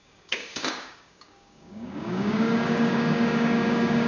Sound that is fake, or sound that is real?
fake